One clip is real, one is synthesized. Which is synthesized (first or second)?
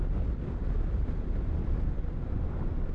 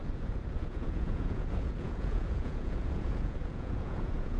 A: second